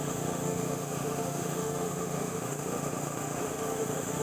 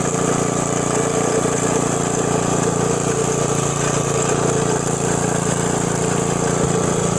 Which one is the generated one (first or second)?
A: first